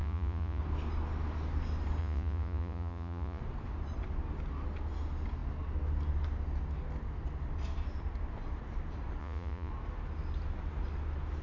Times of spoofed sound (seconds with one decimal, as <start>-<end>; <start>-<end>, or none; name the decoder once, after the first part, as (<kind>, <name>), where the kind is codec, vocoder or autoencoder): 0.0-0.6 (vocoder, Vocos); 2.0-3.4; 9.2-9.7